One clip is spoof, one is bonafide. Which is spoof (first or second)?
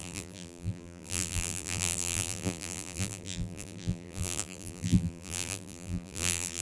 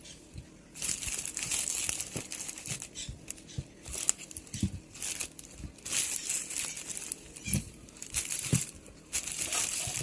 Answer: first